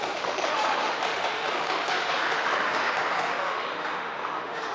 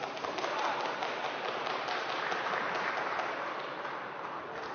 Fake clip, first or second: first